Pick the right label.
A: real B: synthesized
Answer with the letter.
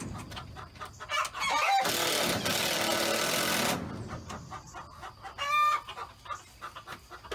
A